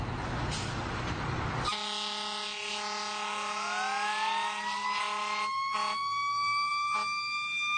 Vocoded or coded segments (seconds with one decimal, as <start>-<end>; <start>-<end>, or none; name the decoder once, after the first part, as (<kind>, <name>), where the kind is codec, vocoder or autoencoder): none